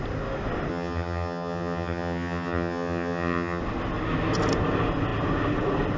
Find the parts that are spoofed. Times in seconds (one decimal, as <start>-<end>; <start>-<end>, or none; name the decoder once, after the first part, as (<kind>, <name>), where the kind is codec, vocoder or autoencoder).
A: 0.7-3.6 (vocoder, HiFi-GAN)